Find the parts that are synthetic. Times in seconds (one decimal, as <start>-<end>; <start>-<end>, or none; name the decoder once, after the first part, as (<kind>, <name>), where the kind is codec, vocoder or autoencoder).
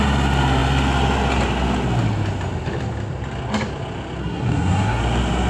4.2-5.0 (codec, SNAC)